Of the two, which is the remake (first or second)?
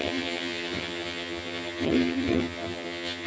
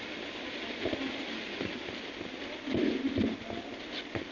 first